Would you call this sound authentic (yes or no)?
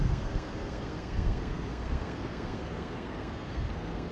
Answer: no